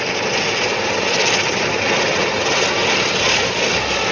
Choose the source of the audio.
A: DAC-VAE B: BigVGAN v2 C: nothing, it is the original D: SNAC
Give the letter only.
C